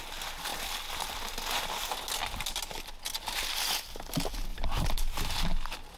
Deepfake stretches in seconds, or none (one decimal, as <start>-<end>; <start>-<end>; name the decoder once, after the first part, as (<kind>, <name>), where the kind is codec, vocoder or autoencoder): 4.5-5.2 (vocoder, BigVGAN v2)